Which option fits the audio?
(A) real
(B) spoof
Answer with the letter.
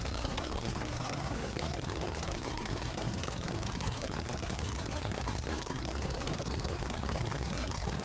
B